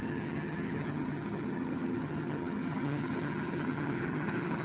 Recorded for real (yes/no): no